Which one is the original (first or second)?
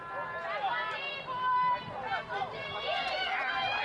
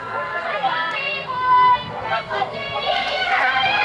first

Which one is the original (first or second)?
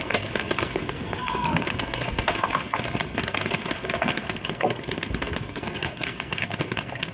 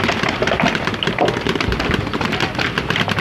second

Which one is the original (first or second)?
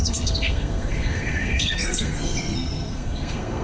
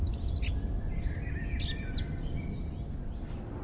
second